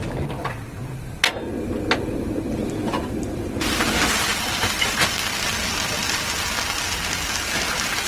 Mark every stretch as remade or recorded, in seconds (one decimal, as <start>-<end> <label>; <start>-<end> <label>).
0.0-4.3 recorded; 4.3-5.2 remade; 5.2-8.1 recorded